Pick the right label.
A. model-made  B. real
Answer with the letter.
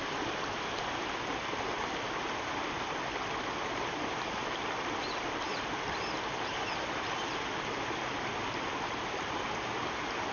B